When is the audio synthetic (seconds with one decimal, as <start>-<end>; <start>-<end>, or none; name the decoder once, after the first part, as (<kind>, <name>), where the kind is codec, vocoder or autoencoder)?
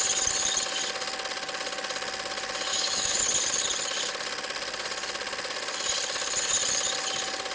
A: 2.7-3.2 (autoencoder, DAC-VAE)